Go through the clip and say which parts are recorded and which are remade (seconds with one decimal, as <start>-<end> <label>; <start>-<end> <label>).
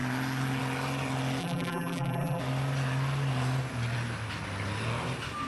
0.0-1.4 recorded; 1.4-2.4 remade; 2.4-5.5 recorded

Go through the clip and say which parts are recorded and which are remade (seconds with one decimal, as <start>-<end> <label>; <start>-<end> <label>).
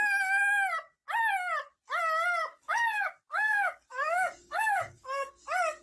0.0-2.4 recorded; 2.4-5.3 remade; 5.3-5.8 recorded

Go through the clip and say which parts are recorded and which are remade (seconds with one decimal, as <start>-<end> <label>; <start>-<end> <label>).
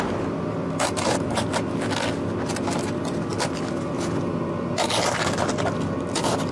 0.0-6.5 recorded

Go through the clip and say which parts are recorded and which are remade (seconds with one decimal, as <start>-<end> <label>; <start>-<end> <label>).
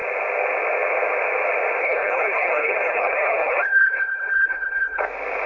0.0-1.8 recorded; 1.8-5.0 remade; 5.0-5.5 recorded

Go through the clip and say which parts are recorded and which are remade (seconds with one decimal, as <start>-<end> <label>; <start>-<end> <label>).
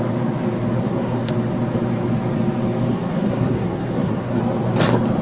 0.0-0.8 recorded; 0.8-1.3 remade; 1.3-2.9 recorded; 2.9-4.4 remade; 4.4-5.2 recorded